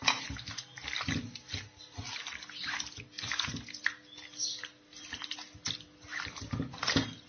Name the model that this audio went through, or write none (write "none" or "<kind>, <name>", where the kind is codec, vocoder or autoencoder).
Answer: none